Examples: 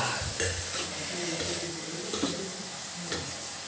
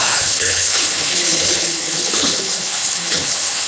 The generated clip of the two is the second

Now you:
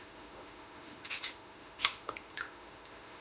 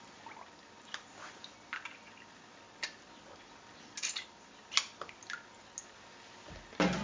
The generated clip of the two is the first